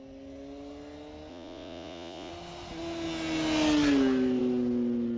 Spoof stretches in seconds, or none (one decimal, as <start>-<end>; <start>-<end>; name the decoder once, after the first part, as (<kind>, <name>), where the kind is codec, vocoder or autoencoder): 1.3-2.3 (vocoder, Vocos)